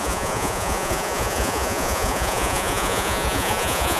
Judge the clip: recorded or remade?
remade